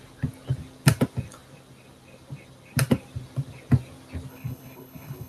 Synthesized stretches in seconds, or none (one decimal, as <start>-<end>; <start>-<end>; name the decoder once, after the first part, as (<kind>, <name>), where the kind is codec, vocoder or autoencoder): 4.3-5.3 (codec, HILCodec)